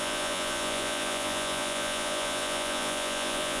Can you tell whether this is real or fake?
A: fake